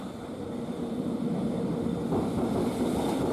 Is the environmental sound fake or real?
fake